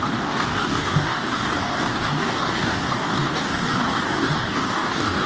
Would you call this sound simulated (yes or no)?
yes